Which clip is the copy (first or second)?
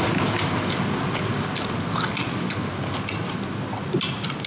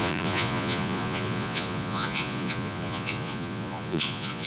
second